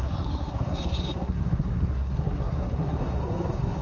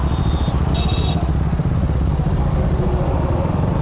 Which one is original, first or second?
second